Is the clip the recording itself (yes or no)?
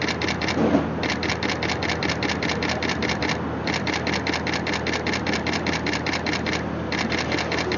yes